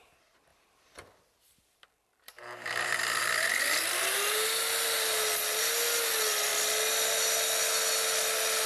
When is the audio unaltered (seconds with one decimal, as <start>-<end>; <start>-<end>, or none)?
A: 0.0-0.5; 3.5-8.7